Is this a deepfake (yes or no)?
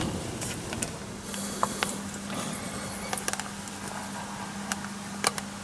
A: no